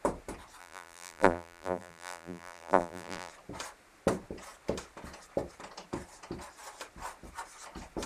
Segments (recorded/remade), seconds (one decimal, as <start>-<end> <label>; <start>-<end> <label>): 0.0-0.6 recorded; 0.6-3.3 remade; 3.3-8.1 recorded